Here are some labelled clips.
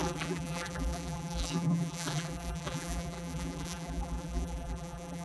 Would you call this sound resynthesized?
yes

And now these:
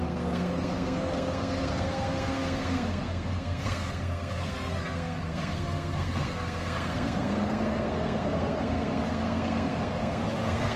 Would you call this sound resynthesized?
yes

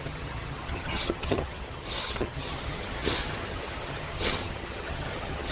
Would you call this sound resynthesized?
yes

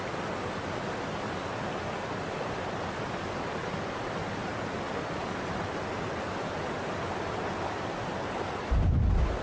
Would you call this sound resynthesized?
no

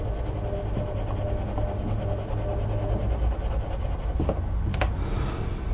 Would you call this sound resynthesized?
no